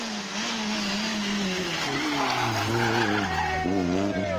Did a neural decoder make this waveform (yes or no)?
no